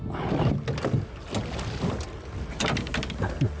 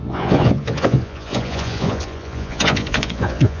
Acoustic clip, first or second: first